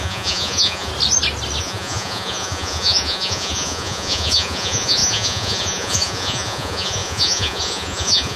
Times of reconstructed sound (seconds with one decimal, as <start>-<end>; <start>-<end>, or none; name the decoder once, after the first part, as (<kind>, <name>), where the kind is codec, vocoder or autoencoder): 0.0-0.9 (vocoder, Vocos); 1.6-8.4